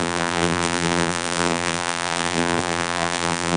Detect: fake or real fake